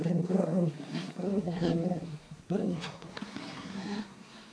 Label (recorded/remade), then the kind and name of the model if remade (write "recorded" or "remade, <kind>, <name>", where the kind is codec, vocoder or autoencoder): remade, codec, SNAC